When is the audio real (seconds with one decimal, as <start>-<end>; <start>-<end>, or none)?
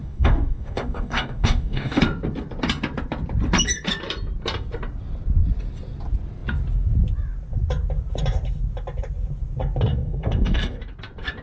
2.0-9.9; 10.8-11.4